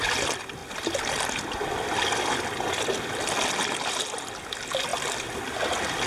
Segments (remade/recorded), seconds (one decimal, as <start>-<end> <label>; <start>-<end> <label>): 0.0-6.1 recorded